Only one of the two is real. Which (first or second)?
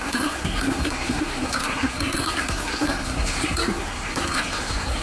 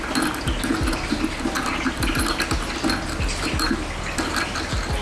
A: second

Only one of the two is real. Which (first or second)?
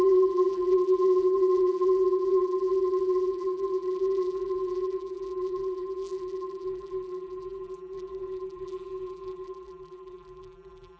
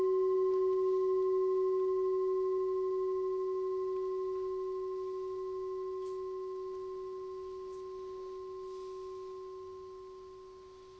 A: second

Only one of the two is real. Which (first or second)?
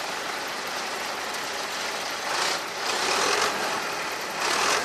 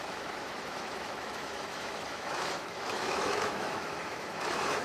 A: first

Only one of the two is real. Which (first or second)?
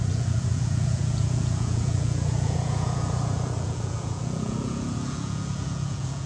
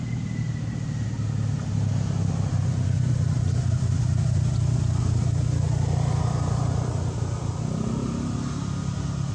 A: second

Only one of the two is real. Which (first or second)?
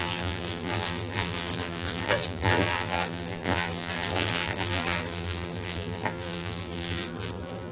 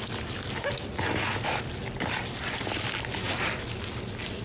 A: second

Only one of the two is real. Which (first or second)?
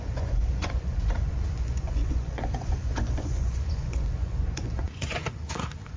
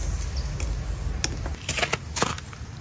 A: second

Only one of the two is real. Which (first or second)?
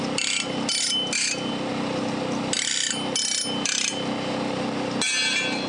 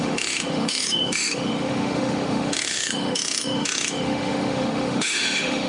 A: first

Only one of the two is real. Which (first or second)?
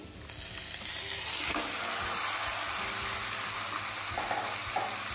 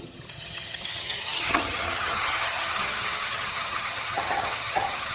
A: first